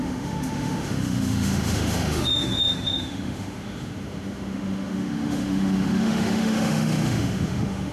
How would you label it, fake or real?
fake